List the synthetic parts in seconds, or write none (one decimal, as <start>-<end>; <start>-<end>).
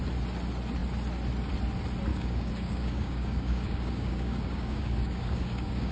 2.1-5.9